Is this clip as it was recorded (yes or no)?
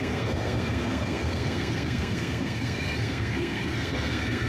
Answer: no